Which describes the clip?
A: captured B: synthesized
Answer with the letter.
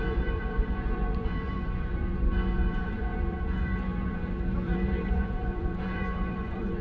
B